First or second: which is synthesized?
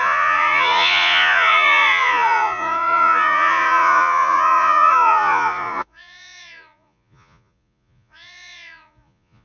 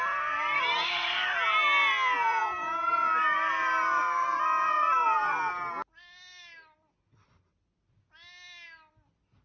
first